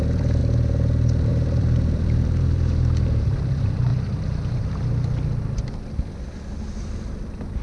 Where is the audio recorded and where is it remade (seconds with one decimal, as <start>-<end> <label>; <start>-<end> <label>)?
0.0-0.4 remade; 0.4-1.3 recorded; 1.3-3.9 remade; 3.9-7.6 recorded